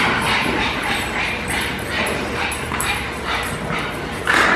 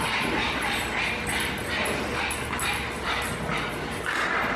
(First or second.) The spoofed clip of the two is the first